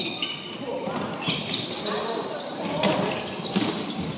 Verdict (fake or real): real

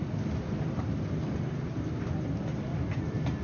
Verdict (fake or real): real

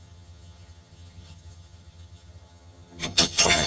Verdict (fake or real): fake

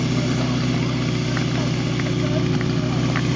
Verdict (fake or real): real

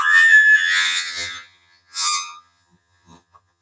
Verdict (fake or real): fake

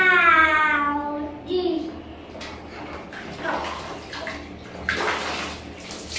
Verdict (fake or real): real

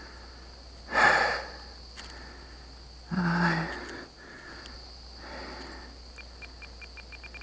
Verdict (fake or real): real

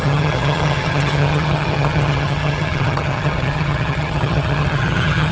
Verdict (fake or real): fake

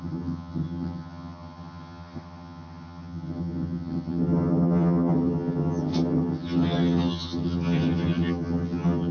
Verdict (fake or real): fake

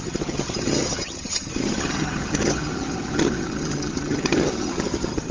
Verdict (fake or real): fake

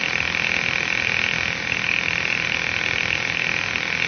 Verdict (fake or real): real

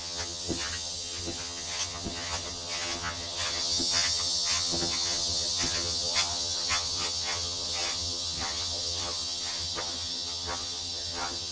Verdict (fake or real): fake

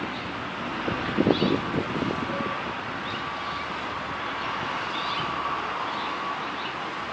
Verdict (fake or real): real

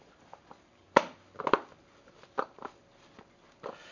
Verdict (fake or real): real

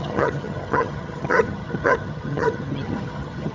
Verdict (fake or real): fake